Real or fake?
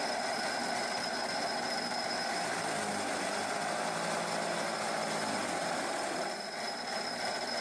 real